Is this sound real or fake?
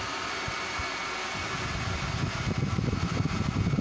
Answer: real